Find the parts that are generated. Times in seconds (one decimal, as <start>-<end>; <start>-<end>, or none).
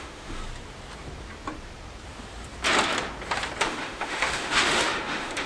0.0-0.4; 3.6-5.5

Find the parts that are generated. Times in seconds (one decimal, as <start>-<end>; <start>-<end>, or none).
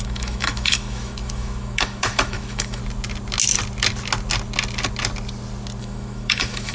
0.0-2.8; 5.8-6.7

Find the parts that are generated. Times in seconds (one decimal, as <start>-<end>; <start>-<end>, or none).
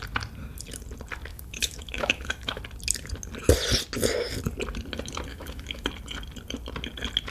1.3-2.6; 5.3-5.9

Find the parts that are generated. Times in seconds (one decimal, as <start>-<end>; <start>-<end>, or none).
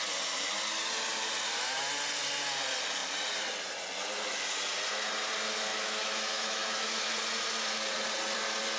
5.7-7.1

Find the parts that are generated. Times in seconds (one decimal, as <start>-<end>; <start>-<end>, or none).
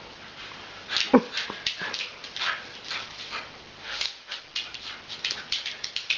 3.8-4.4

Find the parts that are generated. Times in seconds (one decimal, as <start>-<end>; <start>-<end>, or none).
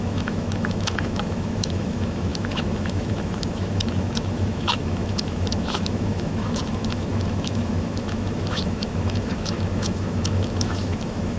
0.0-11.4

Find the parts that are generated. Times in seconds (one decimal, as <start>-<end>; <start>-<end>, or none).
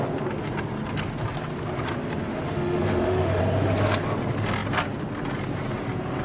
2.3-3.4